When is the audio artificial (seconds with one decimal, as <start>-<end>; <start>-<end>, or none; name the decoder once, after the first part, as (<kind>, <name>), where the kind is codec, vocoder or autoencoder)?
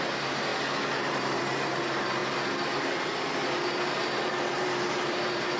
0.0-0.5 (vocoder, BigVGAN v2); 1.2-2.2; 4.5-5.6